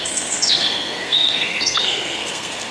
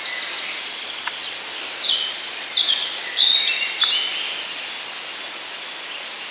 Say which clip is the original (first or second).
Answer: second